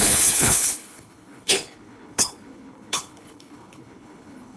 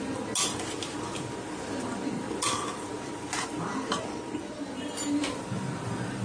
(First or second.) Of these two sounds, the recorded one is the second